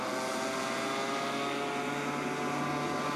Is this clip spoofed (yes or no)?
no